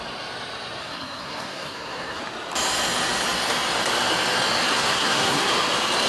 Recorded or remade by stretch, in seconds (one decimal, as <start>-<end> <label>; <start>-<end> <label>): 0.0-0.8 recorded; 0.8-2.2 remade; 2.2-4.7 recorded; 4.7-5.5 remade; 5.5-6.1 recorded